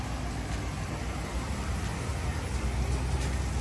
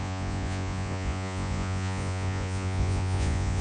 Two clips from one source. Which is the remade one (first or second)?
second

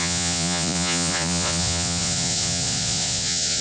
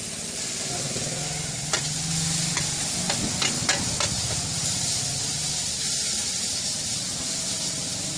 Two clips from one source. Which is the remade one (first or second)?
first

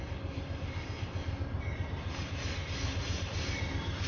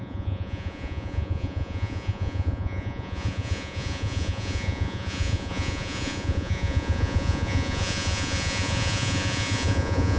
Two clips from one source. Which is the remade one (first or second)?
second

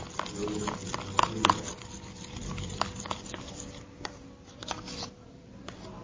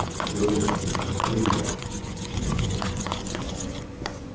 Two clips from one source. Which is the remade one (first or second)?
second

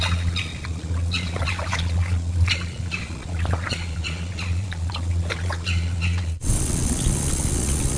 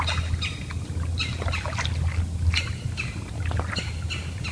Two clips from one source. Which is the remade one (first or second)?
first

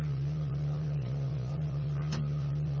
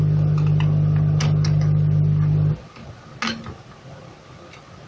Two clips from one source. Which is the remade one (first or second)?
first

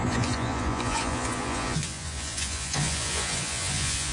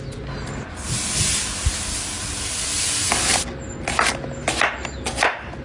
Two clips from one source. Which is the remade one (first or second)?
first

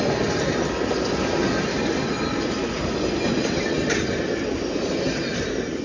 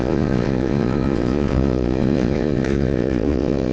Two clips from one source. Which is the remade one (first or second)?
second